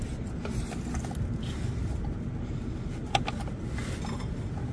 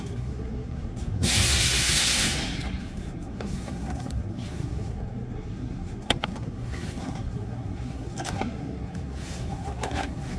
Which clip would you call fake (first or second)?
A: second